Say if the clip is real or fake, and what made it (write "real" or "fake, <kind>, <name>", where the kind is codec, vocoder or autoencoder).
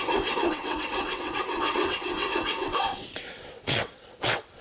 fake, vocoder, WaveNeXt